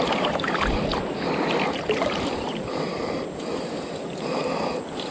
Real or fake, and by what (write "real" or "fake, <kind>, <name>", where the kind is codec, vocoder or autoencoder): real